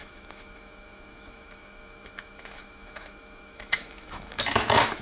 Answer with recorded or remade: remade